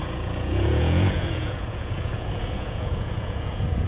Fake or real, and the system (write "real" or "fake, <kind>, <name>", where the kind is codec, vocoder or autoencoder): fake, vocoder, Vocos